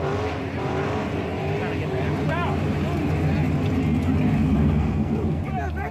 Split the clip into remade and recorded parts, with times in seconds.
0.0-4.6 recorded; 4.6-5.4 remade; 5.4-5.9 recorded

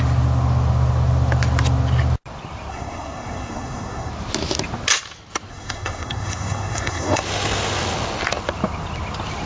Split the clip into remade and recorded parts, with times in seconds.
0.0-2.7 recorded; 2.7-4.1 remade; 4.1-5.5 recorded; 5.5-7.2 remade; 7.2-9.5 recorded

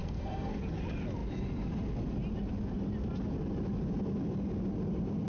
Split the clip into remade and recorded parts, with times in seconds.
0.0-0.6 remade; 0.6-5.3 recorded

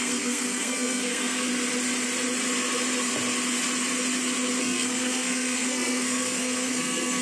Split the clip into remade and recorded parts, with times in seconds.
0.0-1.5 remade; 1.5-4.6 recorded; 4.6-7.2 remade

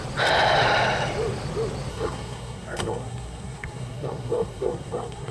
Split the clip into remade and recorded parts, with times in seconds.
0.0-1.9 recorded; 1.9-5.3 remade

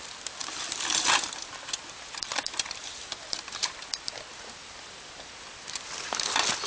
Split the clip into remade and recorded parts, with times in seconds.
0.0-6.7 recorded